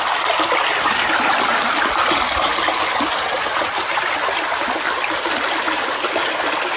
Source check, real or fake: real